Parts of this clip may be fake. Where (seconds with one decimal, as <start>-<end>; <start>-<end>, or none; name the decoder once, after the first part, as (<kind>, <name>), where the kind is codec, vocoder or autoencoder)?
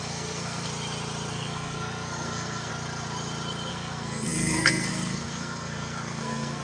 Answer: 0.0-0.7 (codec, SNAC); 1.3-2.7; 3.7-6.6